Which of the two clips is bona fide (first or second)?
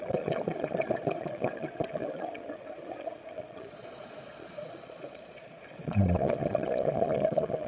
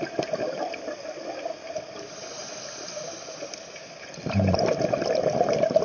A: second